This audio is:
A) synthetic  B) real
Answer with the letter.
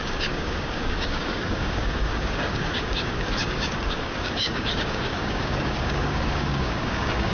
A